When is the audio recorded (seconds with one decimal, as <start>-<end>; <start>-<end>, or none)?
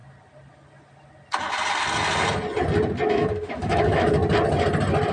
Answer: 0.0-3.1; 4.2-5.1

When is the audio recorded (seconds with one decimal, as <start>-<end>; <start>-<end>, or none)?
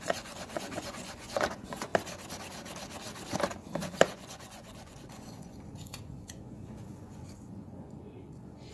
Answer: 1.9-3.8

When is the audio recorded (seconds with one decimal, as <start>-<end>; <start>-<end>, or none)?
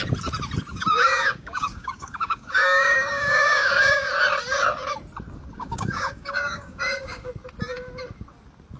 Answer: 0.0-0.7; 4.1-5.6; 7.3-8.8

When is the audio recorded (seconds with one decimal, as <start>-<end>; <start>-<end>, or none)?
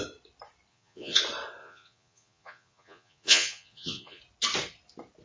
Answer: 0.0-0.7; 1.2-1.6; 4.2-5.2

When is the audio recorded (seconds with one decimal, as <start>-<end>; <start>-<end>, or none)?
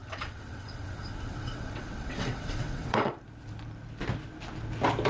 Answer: 3.1-5.1